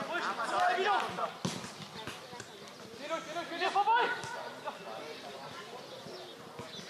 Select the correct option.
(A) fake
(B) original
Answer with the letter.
B